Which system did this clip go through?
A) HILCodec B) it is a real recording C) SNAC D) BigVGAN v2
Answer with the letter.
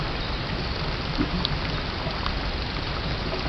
B